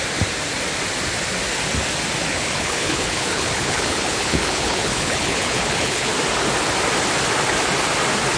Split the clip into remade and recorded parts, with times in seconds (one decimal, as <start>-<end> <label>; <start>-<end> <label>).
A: 0.0-2.3 recorded; 2.3-6.1 remade; 6.1-8.4 recorded